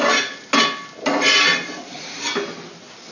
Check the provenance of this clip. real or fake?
real